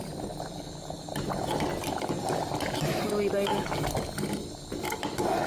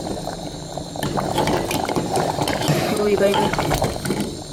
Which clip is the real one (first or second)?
first